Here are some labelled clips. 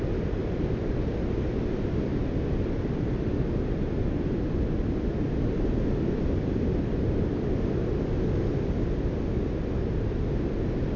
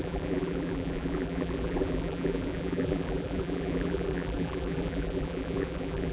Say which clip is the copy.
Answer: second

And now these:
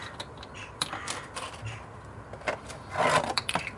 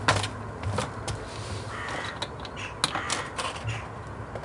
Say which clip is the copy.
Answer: first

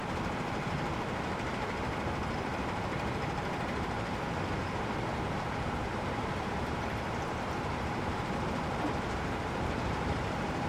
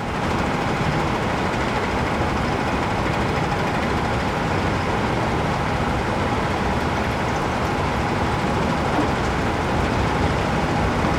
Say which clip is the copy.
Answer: first